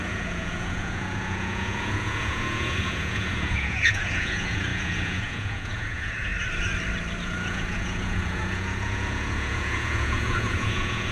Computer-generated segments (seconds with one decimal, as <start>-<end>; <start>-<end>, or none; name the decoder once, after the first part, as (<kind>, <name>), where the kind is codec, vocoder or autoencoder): 0.0-6.3 (vocoder, Vocos); 7.2-11.1